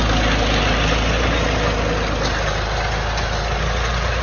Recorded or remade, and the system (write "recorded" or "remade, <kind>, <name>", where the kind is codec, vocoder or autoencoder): recorded